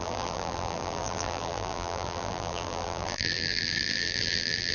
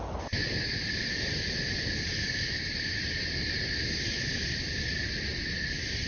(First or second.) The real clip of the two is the second